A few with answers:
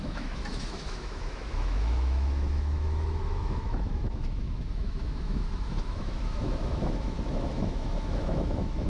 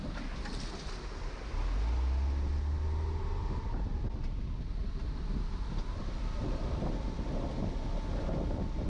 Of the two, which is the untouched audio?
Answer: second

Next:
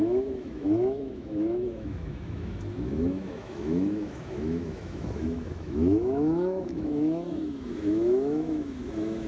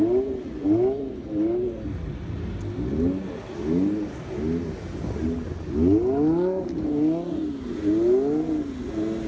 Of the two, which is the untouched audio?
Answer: second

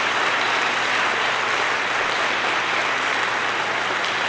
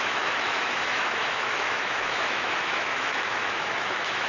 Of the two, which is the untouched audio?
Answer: first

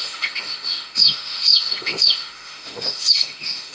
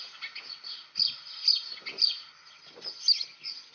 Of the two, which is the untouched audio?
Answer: second